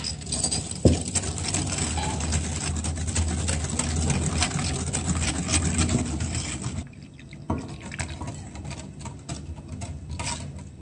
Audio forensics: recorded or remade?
recorded